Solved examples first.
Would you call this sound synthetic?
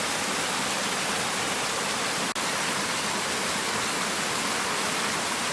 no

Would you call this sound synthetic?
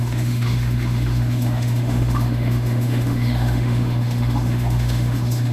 yes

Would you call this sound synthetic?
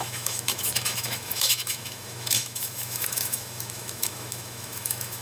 yes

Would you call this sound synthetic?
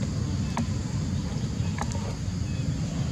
no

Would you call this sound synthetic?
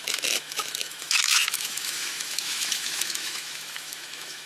yes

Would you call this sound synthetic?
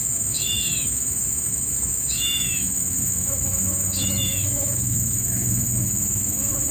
yes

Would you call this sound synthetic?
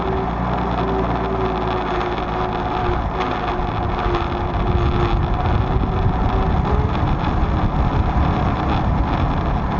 no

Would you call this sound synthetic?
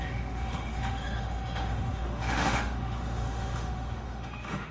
yes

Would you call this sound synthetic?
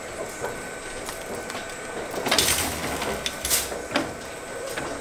no